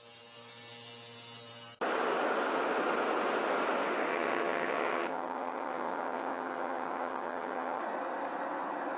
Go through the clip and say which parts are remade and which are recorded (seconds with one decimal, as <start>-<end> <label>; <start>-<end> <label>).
0.0-4.1 recorded; 4.1-7.8 remade; 7.8-9.0 recorded